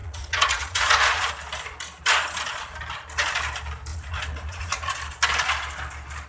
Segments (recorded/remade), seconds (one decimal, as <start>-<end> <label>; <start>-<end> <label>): 0.0-1.3 remade; 1.3-3.9 recorded; 3.9-4.9 remade; 4.9-6.3 recorded